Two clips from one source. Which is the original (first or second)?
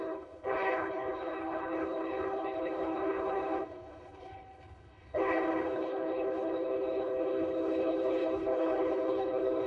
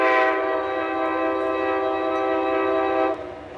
second